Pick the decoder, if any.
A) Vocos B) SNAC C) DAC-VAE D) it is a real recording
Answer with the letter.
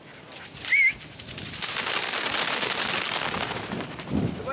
D